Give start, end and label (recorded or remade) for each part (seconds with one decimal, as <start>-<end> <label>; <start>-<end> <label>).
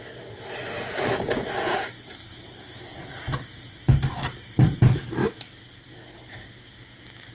0.0-1.8 recorded; 1.8-4.7 remade; 4.7-7.3 recorded